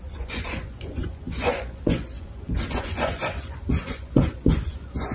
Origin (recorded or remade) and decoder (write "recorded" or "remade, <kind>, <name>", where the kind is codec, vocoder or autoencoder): remade, vocoder, Vocos